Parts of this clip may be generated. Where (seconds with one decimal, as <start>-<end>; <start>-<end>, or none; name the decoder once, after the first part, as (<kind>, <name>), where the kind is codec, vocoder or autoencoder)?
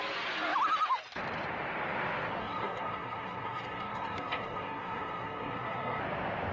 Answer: 2.4-6.0 (codec, SNAC)